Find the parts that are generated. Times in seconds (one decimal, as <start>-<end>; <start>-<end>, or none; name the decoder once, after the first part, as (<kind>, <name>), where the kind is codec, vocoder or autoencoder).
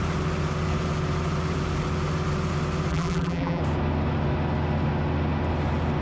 2.9-3.6 (vocoder, BigVGAN v2)